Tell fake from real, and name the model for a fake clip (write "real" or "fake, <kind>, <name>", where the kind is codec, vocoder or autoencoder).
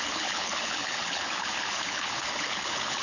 fake, codec, HILCodec